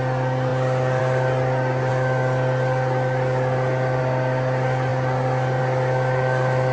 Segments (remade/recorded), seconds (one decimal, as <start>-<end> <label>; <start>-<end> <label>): 0.0-6.7 recorded